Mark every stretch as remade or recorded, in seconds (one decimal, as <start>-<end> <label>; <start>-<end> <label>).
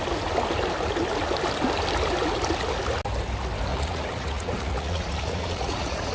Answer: 0.0-3.7 recorded; 3.7-6.1 remade